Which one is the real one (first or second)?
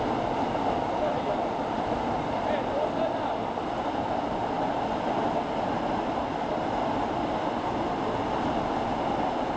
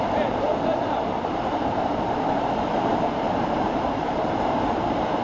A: first